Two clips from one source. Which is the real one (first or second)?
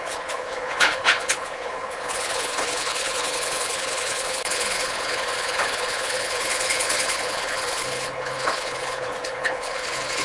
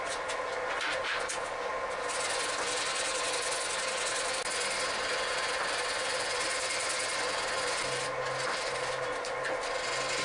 second